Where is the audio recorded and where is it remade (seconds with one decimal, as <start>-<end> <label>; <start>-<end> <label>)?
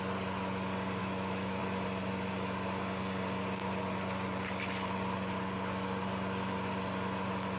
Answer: 0.0-1.0 recorded; 1.0-1.6 remade; 1.6-7.6 recorded